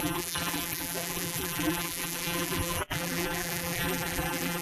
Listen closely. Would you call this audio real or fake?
fake